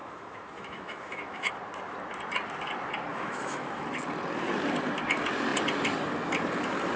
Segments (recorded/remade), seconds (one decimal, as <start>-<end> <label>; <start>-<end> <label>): 0.0-1.5 remade; 1.5-3.1 recorded; 3.1-3.8 remade; 3.8-7.0 recorded